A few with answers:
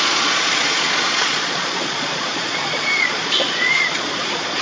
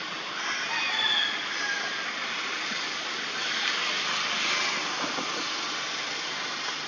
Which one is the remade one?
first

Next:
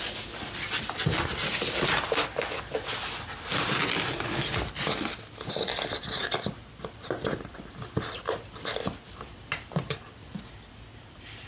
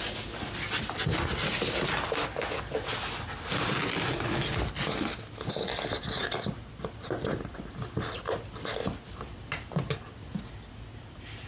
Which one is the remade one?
first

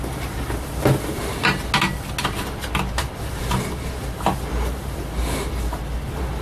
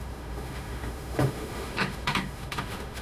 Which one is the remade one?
second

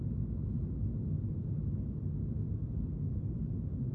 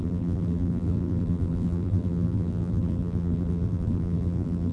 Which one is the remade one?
second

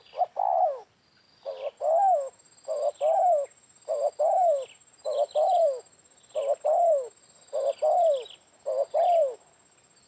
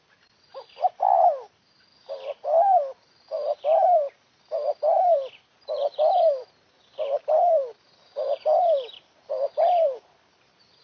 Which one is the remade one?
second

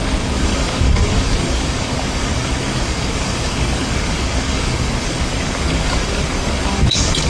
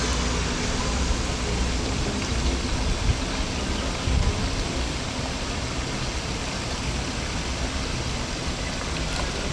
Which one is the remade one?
first